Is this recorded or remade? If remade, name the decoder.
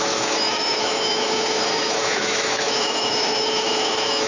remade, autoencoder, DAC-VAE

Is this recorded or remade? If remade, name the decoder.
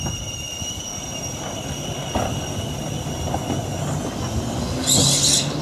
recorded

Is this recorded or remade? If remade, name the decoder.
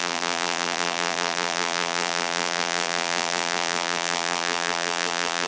remade, vocoder, BigVGAN v2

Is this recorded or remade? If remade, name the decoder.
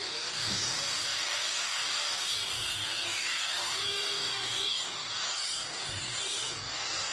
remade, codec, DAC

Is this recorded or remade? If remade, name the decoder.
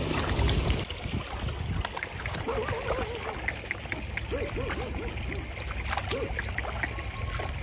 recorded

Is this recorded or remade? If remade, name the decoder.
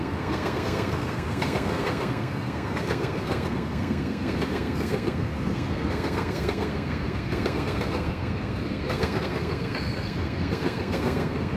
remade, codec, SNAC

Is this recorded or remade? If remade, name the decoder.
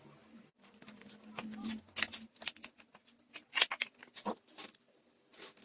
recorded